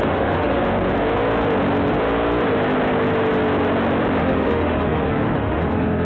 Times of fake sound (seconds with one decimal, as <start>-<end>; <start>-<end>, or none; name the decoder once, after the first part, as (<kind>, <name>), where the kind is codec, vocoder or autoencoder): 0.0-0.6 (autoencoder, DAC-VAE); 4.2-6.0